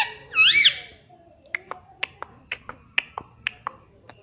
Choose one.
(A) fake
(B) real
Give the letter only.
B